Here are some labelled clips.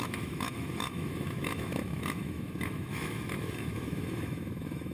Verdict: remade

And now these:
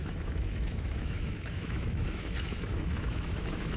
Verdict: remade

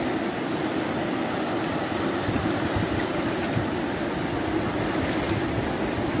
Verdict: recorded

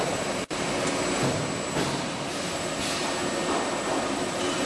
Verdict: recorded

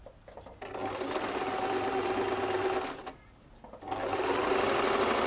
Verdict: recorded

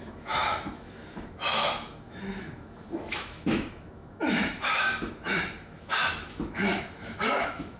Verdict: remade